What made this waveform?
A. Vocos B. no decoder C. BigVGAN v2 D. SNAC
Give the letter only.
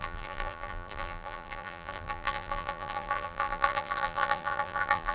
C